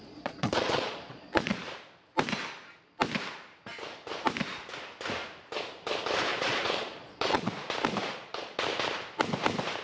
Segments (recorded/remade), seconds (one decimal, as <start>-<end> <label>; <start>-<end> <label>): 0.0-1.6 remade; 1.6-6.3 recorded; 6.3-7.5 remade; 7.5-8.0 recorded; 8.0-8.6 remade; 8.6-9.8 recorded